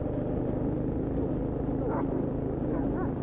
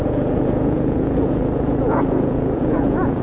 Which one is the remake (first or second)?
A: second